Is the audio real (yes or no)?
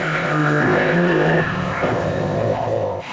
no